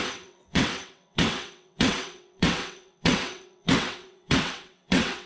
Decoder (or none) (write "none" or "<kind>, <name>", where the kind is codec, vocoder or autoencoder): vocoder, WaveNeXt